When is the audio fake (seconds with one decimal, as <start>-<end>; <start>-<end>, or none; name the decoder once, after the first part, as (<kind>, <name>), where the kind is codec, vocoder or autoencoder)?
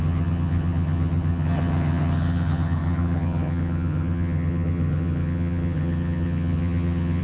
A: 0.0-7.2 (vocoder, HiFi-GAN)